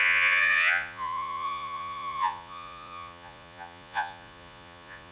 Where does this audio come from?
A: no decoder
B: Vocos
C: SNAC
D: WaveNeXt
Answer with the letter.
B